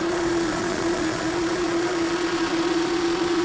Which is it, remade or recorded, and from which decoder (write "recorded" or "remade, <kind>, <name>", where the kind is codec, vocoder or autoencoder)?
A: remade, vocoder, Vocos